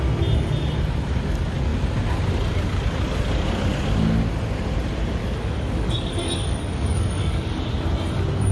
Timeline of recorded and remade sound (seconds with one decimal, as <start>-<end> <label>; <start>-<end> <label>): 0.0-5.2 recorded; 5.2-7.6 remade; 7.6-8.5 recorded